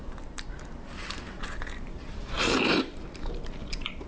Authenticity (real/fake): fake